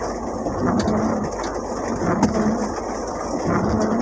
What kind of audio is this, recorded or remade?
recorded